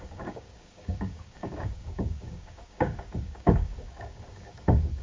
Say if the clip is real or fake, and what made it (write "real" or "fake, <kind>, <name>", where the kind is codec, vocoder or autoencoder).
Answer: fake, codec, DAC